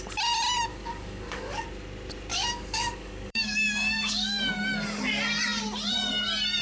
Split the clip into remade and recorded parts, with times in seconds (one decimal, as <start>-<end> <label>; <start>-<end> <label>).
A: 0.0-0.7 recorded; 0.7-1.6 remade; 1.6-2.3 recorded; 2.3-4.5 remade; 4.5-6.6 recorded